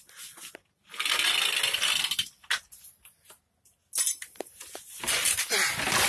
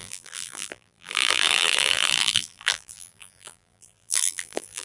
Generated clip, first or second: second